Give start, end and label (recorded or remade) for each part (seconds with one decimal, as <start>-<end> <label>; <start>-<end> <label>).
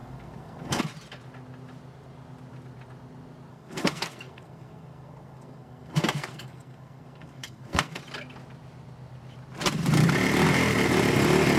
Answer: 0.0-0.8 remade; 0.8-3.5 recorded; 3.5-8.0 remade; 8.0-11.6 recorded